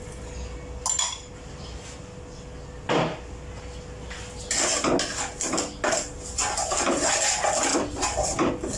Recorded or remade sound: recorded